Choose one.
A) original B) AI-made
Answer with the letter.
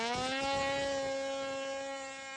A